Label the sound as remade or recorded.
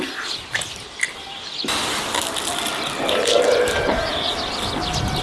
recorded